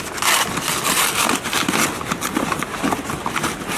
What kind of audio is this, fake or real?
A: real